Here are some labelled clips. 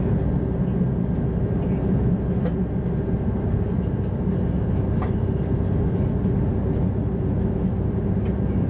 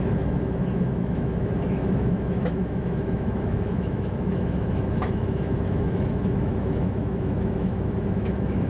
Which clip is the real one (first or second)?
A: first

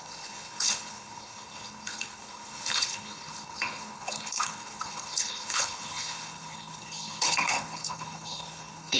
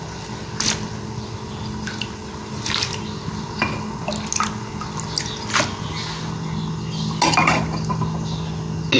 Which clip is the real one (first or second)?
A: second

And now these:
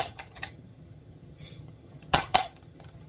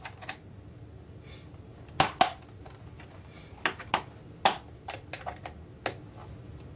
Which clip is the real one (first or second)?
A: second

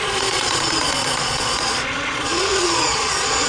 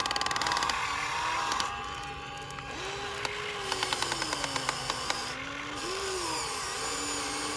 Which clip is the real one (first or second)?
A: second